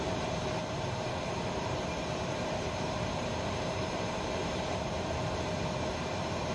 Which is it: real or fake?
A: fake